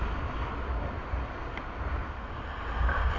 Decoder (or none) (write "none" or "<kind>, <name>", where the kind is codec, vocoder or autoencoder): none